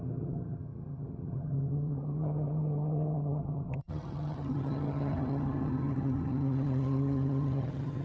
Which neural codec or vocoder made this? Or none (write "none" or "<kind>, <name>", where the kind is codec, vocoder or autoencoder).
vocoder, HiFi-GAN